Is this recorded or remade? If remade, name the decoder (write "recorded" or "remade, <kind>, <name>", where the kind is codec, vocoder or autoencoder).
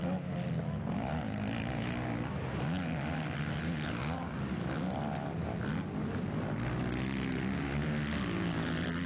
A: recorded